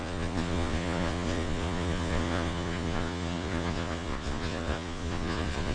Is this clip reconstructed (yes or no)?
yes